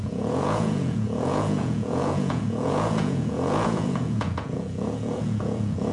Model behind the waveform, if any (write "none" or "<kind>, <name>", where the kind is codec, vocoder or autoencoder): vocoder, Vocos